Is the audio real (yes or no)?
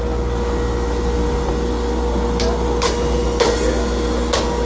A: yes